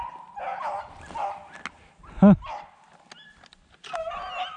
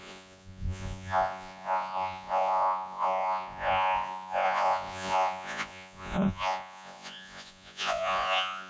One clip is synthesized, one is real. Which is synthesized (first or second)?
second